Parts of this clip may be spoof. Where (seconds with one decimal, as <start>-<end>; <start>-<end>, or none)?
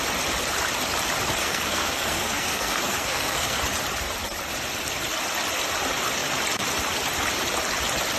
1.4-3.6